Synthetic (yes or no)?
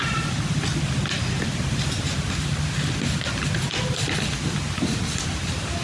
no